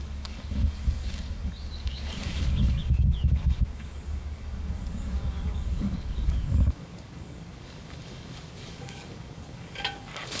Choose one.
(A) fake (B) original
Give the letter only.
A